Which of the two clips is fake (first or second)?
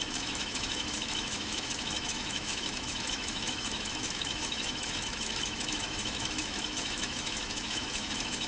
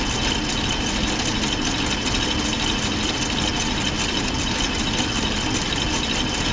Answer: first